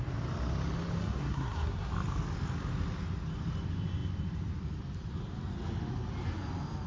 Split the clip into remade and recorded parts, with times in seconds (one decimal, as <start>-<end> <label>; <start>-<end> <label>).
0.0-1.0 recorded; 1.0-1.9 remade; 1.9-6.9 recorded